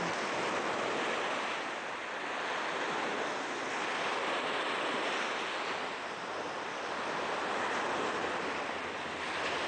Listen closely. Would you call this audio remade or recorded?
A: recorded